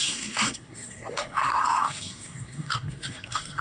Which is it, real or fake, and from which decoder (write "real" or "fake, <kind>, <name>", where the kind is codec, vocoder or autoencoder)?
fake, codec, SNAC